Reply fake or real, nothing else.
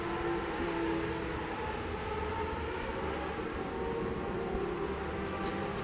real